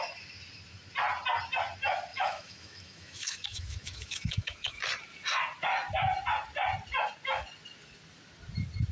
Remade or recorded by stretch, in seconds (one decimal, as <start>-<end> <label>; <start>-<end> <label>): 0.0-2.1 recorded; 2.1-4.8 remade; 4.8-8.9 recorded